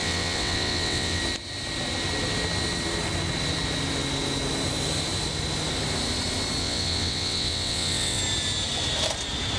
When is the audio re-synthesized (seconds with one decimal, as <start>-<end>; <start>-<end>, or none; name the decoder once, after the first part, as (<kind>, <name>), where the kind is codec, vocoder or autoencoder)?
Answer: 0.0-1.2 (vocoder, WaveNeXt); 6.6-8.2